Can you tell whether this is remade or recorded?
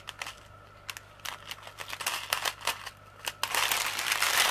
recorded